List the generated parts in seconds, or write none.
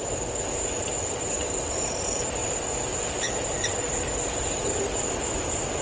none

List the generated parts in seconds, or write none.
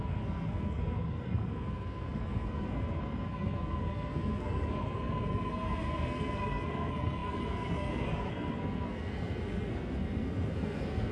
0.0-11.1 (codec, SNAC)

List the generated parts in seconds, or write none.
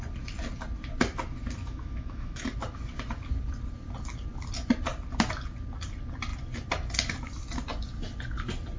1.6-2.4 (autoencoder, DAC-VAE)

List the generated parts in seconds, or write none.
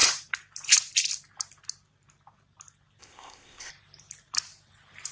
3.0-3.7 (codec, ZipCodec)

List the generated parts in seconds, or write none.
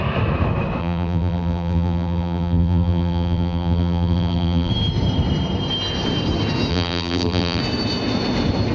0.8-4.7 (vocoder, BigVGAN v2); 6.7-7.6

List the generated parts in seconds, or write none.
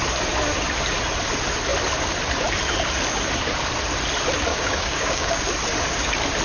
4.5-5.4 (codec, DAC)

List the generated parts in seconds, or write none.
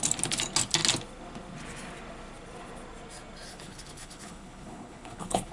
3.5-5.5 (codec, HILCodec)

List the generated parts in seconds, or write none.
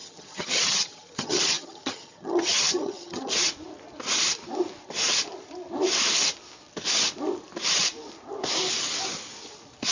0.0-3.4 (vocoder, HiFi-GAN)